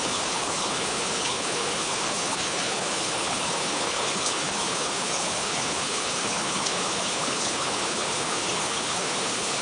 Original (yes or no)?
no